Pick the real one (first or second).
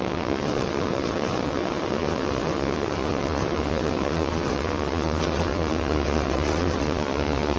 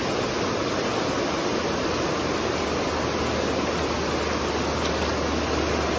second